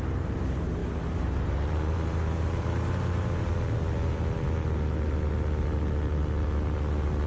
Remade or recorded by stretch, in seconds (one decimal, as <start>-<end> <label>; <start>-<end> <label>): 0.0-3.5 remade; 3.5-7.3 recorded